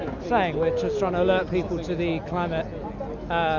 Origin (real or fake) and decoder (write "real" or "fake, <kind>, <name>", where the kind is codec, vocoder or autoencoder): real